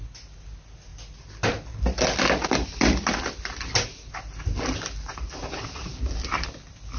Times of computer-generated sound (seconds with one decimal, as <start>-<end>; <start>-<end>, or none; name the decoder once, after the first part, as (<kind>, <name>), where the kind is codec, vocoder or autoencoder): none